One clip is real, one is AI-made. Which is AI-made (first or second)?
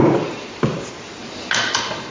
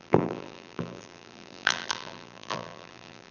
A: second